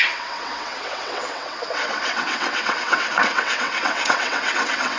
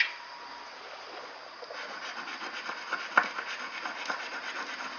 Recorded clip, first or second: second